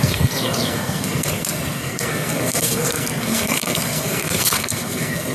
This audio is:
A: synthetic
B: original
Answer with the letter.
A